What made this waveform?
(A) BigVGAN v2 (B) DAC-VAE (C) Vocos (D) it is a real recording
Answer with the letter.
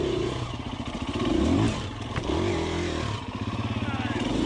A